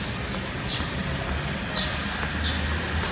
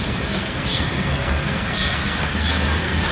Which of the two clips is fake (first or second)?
second